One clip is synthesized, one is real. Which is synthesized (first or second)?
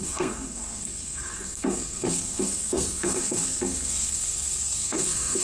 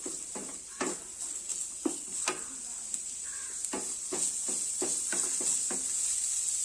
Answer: first